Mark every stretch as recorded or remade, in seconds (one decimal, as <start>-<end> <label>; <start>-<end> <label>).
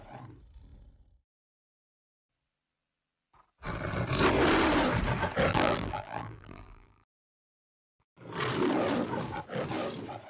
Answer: 0.0-5.5 recorded; 5.5-7.8 remade; 7.8-10.3 recorded